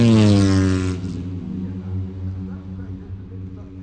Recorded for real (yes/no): yes